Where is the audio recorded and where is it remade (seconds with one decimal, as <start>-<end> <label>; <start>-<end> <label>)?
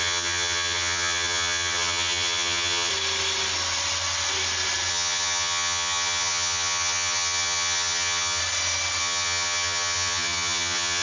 0.0-2.9 remade; 2.9-4.9 recorded; 4.9-8.4 remade; 8.4-9.0 recorded; 9.0-11.0 remade